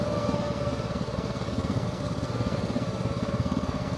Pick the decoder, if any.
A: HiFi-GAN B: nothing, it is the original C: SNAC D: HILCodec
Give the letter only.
C